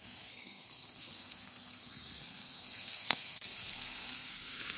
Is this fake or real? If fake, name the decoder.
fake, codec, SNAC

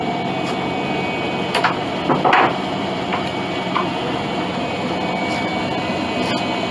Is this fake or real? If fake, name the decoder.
real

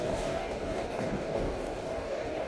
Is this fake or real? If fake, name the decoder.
fake, codec, DAC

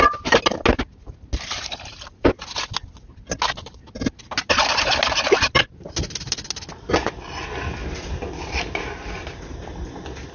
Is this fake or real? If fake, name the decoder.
real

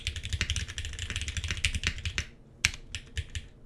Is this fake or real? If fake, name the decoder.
real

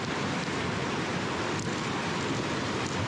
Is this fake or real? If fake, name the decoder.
real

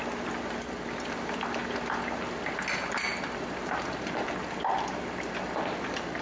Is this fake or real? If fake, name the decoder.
real